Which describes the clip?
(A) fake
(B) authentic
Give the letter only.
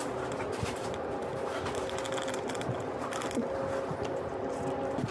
B